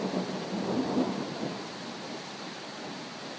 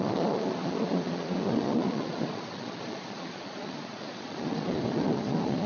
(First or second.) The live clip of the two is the first